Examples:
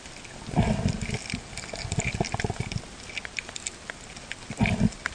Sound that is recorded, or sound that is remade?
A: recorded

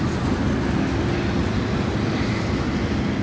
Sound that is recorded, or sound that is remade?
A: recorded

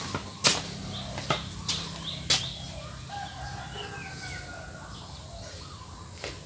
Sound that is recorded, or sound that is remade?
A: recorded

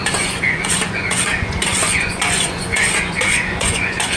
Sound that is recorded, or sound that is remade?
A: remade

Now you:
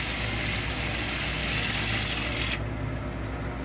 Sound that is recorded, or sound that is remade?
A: recorded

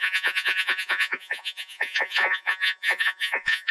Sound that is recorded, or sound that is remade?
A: remade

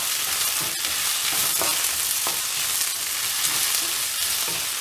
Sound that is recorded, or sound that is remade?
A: recorded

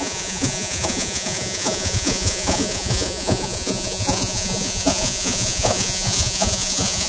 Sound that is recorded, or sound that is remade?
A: remade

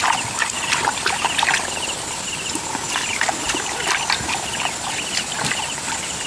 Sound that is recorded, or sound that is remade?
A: recorded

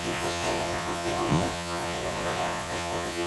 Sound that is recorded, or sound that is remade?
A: remade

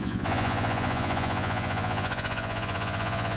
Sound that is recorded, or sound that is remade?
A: remade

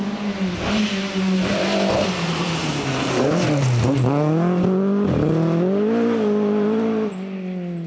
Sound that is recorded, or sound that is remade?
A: recorded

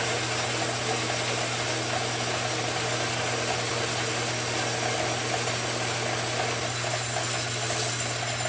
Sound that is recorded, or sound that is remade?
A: recorded